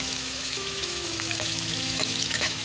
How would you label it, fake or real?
fake